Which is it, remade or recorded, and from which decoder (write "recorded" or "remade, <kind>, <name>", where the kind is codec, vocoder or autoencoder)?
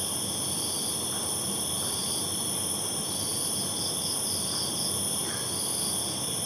recorded